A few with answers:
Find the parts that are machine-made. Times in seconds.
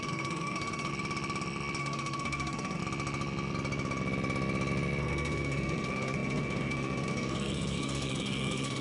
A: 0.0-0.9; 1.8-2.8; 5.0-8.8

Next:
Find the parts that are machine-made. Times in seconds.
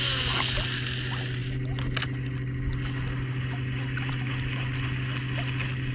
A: none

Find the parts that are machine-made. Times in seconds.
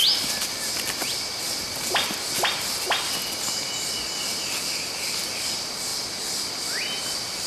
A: none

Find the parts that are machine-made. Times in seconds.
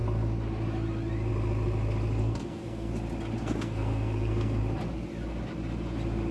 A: 2.2-2.9; 3.4-4.6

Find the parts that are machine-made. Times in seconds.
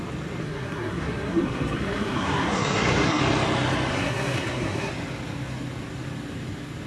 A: 0.4-3.2; 3.9-4.9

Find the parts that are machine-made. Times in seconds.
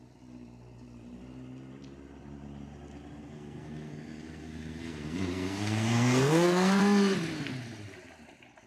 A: 3.2-6.8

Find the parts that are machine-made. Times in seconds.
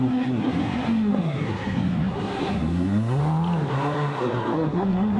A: 0.0-3.2; 3.7-5.2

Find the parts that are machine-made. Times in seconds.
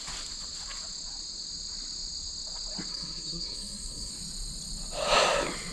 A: 2.9-4.1